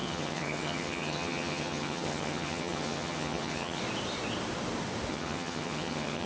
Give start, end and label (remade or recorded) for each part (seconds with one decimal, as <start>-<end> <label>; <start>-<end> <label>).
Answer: 0.0-3.8 remade; 3.8-5.1 recorded; 5.1-6.3 remade

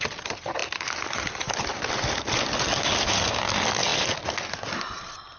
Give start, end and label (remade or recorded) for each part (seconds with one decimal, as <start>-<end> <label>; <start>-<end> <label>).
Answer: 0.0-5.4 recorded

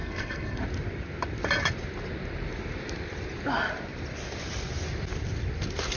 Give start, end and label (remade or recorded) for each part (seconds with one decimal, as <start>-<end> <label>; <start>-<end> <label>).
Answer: 0.0-0.6 remade; 0.6-6.0 recorded

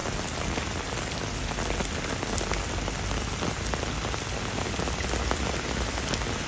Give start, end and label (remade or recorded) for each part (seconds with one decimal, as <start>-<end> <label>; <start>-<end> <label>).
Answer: 0.0-6.5 recorded

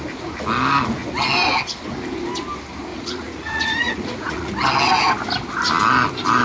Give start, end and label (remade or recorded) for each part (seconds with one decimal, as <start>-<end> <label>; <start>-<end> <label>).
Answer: 0.0-2.9 recorded; 2.9-4.5 remade; 4.5-6.4 recorded

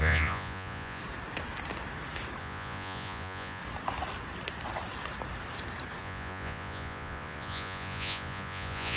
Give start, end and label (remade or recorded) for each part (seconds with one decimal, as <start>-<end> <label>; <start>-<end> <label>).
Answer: 0.0-1.0 remade; 1.0-2.4 recorded; 2.4-3.6 remade; 3.6-6.0 recorded; 6.0-9.0 remade

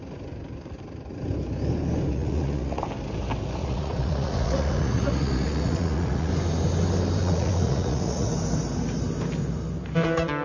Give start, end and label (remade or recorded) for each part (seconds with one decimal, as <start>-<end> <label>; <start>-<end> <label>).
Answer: 0.0-2.1 recorded; 2.1-2.8 remade; 2.8-3.6 recorded; 3.6-6.3 remade; 6.3-7.2 recorded; 7.2-8.3 remade; 8.3-10.4 recorded